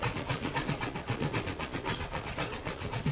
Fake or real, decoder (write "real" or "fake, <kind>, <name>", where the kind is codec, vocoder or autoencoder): fake, vocoder, Vocos